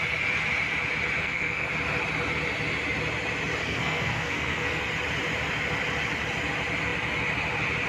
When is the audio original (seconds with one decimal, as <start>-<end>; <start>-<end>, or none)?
0.0-1.2; 1.7-3.6; 4.8-7.9